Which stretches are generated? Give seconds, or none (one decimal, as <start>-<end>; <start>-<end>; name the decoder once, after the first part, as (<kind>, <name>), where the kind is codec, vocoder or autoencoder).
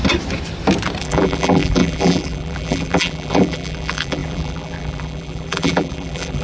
1.0-6.4 (vocoder, BigVGAN v2)